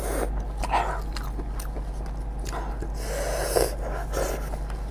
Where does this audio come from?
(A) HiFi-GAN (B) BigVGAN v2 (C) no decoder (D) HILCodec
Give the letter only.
C